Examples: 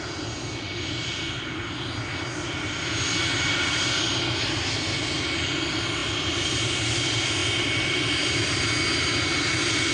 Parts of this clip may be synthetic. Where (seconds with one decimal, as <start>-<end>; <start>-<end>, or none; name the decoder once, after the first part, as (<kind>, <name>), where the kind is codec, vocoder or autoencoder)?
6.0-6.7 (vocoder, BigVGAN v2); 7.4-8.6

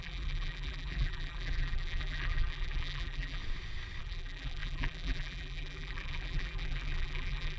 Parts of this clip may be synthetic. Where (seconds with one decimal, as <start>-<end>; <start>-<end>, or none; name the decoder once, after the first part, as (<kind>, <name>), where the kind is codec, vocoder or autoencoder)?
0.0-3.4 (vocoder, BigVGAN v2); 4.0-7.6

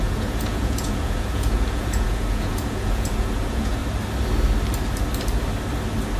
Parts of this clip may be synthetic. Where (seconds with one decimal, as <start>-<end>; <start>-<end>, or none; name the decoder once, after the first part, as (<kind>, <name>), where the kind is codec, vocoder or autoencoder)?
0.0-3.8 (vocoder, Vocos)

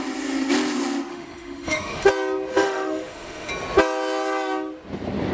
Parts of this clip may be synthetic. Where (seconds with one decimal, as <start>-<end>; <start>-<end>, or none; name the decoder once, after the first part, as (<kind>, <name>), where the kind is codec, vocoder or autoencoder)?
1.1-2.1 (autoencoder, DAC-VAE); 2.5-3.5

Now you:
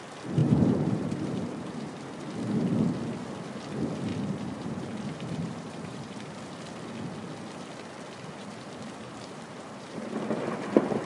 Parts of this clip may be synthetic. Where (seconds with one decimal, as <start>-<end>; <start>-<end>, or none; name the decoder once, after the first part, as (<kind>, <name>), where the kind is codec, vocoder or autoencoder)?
0.4-2.0 (vocoder, BigVGAN v2); 4.1-6.3; 8.4-10.4

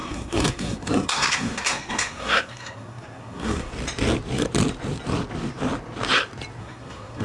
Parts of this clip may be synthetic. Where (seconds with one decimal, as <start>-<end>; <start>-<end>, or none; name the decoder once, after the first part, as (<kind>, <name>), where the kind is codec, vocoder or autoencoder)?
0.0-3.7 (codec, SNAC); 6.6-7.2

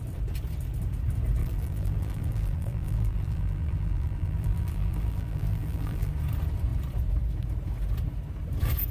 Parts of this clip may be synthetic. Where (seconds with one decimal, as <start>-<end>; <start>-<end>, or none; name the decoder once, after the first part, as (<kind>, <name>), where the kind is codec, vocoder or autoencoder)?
1.4-6.1 (vocoder, BigVGAN v2)